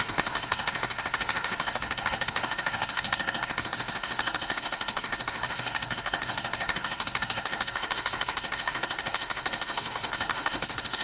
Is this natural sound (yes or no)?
no